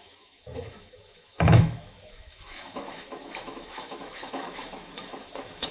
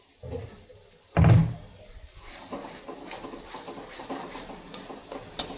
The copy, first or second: first